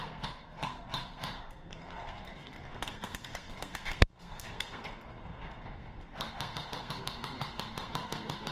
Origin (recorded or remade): remade